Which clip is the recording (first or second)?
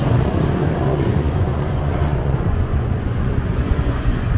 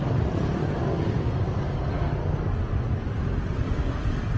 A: second